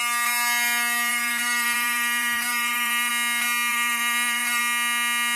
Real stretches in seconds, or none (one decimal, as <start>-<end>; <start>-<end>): 0.0-1.1; 3.1-3.7; 4.6-5.4